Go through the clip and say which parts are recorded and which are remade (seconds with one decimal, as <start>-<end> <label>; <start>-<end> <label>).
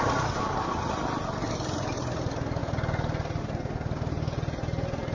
0.0-5.1 recorded